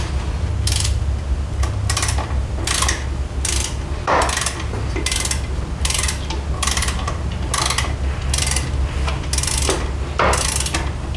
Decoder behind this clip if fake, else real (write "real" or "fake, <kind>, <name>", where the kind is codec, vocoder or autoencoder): real